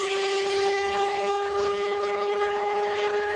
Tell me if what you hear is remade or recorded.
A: remade